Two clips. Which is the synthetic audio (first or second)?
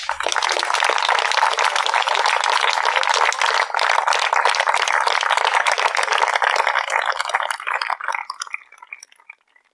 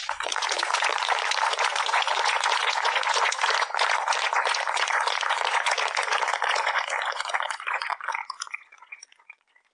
second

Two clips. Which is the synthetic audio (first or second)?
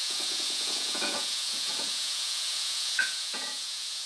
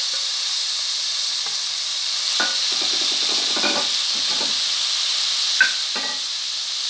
first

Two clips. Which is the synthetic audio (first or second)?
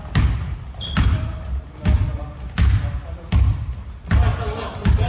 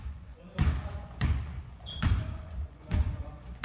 second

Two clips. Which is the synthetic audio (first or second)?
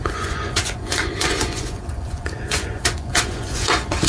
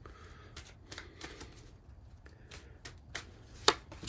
first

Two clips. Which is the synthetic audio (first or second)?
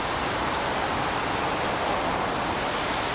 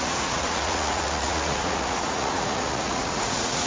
second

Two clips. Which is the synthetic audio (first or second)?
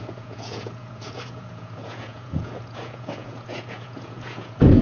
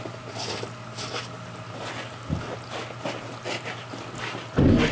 first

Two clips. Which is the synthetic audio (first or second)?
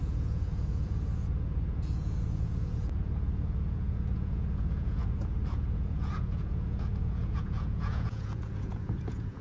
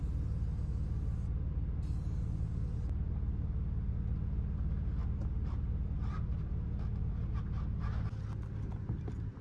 first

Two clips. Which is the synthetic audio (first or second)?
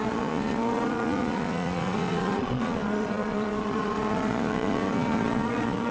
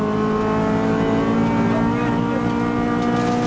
first